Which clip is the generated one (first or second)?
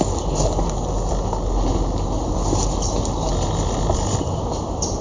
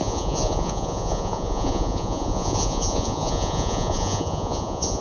second